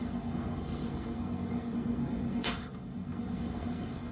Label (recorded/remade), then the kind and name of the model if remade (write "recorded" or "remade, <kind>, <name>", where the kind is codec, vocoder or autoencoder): remade, codec, SNAC